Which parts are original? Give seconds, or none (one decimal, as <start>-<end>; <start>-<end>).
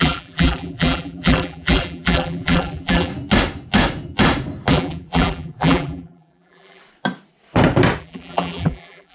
3.1-4.7; 6.8-8.0